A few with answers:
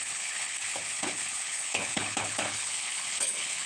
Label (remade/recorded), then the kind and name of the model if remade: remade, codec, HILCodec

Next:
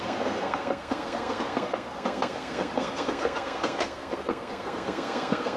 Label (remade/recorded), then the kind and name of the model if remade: remade, codec, SNAC